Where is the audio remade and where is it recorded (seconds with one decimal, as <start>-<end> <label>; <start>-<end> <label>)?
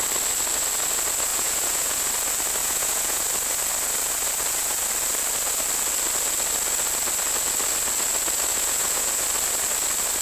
0.0-1.3 recorded; 1.3-2.0 remade; 2.0-2.6 recorded; 2.6-3.2 remade; 3.2-8.5 recorded; 8.5-9.1 remade; 9.1-10.2 recorded